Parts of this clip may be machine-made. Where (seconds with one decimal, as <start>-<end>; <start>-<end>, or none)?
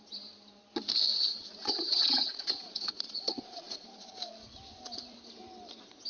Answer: 1.1-4.1